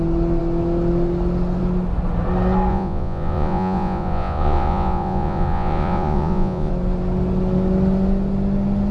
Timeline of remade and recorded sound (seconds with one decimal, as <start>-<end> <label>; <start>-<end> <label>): 0.0-2.7 recorded; 2.7-6.7 remade; 6.7-8.9 recorded